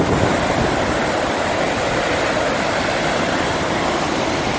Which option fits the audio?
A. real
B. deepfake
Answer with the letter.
A